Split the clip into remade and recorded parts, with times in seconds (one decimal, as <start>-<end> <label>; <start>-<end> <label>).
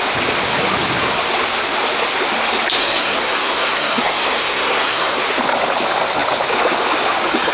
0.0-2.8 recorded; 2.8-5.2 remade; 5.2-7.5 recorded